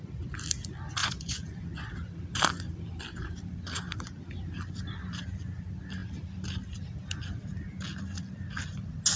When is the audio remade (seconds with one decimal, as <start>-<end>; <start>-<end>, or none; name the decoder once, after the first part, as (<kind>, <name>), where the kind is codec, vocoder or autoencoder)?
1.0-1.9 (vocoder, Vocos)